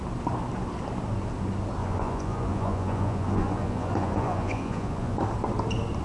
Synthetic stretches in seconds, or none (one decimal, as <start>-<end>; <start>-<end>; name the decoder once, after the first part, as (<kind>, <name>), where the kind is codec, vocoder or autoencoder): 1.8-5.2 (vocoder, Vocos)